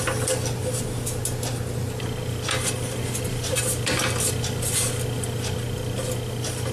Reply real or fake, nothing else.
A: real